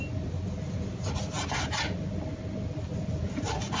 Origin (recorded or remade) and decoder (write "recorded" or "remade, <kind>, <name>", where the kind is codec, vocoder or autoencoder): recorded